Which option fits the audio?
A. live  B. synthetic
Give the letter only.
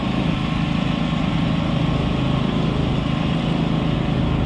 A